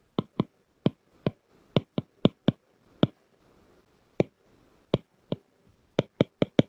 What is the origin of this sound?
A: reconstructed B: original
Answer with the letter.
B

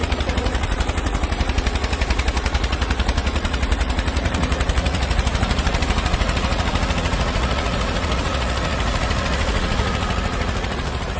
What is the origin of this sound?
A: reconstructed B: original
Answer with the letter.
A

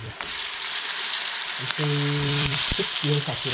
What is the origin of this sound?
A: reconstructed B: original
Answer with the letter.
A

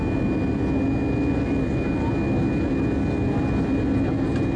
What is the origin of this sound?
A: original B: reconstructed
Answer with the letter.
A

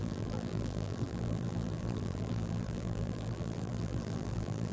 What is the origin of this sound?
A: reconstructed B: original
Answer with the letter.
A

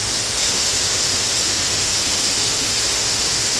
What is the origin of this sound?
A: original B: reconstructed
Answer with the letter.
B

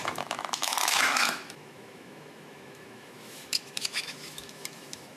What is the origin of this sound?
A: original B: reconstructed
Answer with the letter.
B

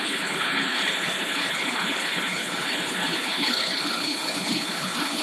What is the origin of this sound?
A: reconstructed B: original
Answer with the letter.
A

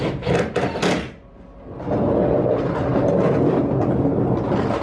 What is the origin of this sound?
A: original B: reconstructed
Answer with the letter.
A